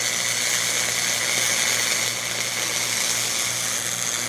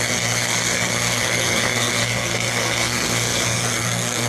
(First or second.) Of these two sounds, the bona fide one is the first